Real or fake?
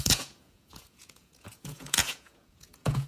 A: fake